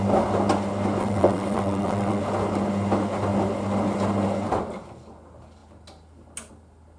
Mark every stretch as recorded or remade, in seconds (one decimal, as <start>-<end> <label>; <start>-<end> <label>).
0.0-1.0 recorded; 1.0-2.2 remade; 2.2-7.0 recorded